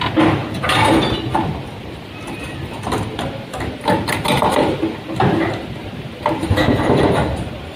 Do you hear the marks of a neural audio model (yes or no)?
no